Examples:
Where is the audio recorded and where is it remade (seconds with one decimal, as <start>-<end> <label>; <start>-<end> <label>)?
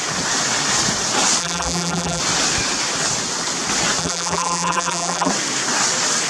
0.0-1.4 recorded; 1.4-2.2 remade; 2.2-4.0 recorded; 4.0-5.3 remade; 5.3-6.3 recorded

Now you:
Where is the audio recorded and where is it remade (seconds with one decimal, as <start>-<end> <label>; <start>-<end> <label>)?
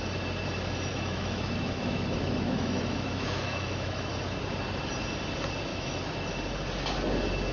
0.0-0.9 recorded; 0.9-4.1 remade; 4.1-5.7 recorded; 5.7-6.3 remade; 6.3-7.5 recorded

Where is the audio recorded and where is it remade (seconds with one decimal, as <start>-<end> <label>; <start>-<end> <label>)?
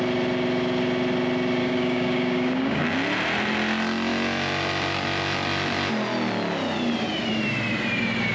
0.0-1.6 recorded; 1.6-2.8 remade; 2.8-8.3 recorded